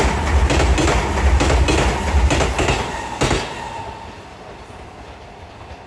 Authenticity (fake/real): real